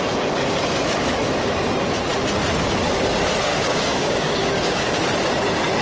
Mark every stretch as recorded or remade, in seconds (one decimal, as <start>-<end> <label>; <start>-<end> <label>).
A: 0.0-3.5 recorded; 3.5-5.0 remade; 5.0-5.8 recorded